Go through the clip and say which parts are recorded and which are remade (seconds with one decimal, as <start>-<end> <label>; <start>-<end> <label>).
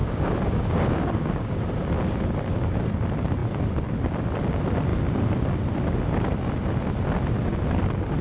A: 0.0-1.6 remade; 1.6-8.2 recorded